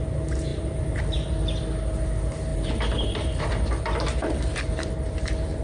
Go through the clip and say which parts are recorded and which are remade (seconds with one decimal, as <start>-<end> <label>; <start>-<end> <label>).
0.0-0.5 recorded; 0.5-1.0 remade; 1.0-2.5 recorded; 2.5-5.6 remade